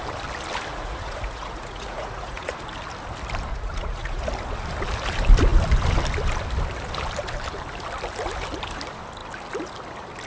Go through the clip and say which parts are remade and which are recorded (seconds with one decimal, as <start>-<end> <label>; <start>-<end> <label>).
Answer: 0.0-0.7 recorded; 0.7-2.5 remade; 2.5-3.5 recorded; 3.5-4.2 remade; 4.2-10.3 recorded